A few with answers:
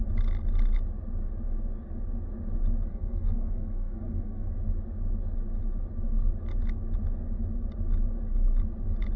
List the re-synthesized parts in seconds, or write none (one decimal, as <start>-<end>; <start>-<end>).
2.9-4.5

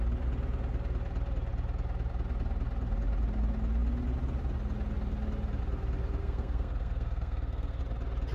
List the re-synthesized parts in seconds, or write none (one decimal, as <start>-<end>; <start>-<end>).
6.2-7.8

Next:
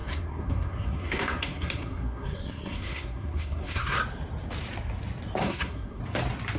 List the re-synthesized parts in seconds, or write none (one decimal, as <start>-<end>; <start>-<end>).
0.0-4.0; 5.4-6.0

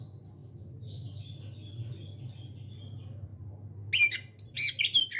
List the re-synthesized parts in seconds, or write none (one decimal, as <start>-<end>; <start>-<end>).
none